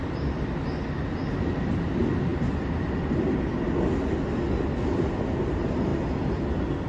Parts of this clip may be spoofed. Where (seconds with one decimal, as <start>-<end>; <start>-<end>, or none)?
none